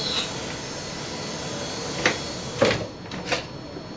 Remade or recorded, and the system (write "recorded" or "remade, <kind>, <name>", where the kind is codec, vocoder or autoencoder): recorded